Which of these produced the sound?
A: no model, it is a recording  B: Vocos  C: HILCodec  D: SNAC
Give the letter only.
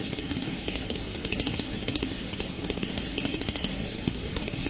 D